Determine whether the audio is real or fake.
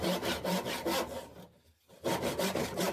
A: real